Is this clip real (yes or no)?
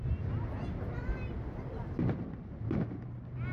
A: yes